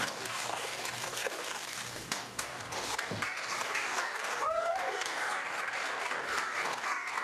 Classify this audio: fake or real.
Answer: fake